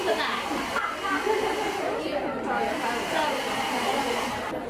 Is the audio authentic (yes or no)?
yes